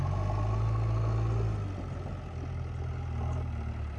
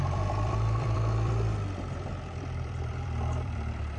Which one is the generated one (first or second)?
second